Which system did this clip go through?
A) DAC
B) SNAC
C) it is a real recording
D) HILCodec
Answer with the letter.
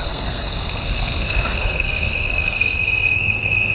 B